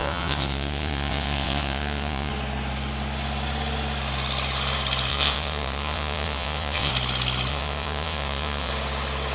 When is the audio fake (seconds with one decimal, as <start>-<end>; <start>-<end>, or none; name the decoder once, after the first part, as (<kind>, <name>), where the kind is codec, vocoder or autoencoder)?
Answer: 0.0-2.3 (vocoder, WaveNeXt); 5.1-6.9; 7.5-8.7